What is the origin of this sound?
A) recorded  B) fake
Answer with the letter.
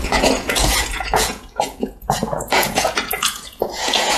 B